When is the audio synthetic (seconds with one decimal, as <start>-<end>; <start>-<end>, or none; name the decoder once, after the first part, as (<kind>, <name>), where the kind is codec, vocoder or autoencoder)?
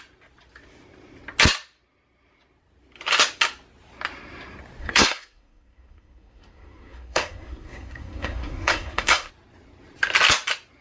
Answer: 4.8-9.3 (codec, SNAC)